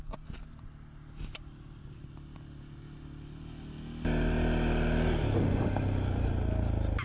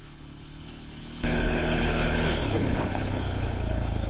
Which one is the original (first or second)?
first